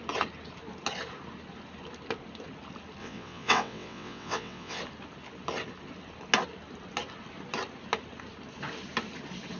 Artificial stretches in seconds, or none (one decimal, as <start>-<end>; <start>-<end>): 3.0-4.8